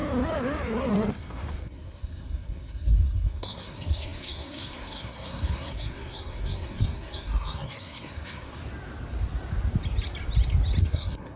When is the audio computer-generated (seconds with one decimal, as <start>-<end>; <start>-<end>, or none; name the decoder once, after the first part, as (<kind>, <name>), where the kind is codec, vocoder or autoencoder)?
0.9-8.6 (codec, SNAC); 10.8-11.4